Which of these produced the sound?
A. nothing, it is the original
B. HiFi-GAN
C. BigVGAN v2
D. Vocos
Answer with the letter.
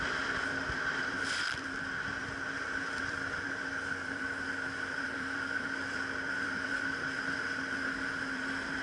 C